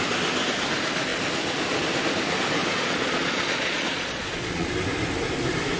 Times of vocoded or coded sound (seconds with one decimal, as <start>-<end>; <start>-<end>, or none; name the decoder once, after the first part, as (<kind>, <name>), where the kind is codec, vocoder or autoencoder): 2.6-4.7 (vocoder, Vocos)